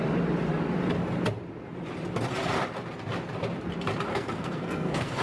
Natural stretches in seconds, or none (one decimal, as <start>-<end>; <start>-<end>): 0.0-4.1